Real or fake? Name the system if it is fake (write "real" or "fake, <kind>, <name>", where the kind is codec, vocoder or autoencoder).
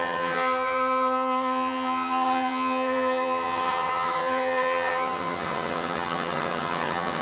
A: fake, vocoder, HiFi-GAN